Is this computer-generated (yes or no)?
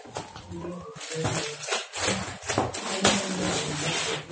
no